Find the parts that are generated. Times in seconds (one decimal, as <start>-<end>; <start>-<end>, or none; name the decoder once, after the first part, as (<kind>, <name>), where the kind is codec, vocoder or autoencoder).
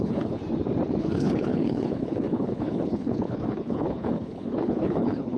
0.0-0.4 (codec, HILCodec); 1.0-5.4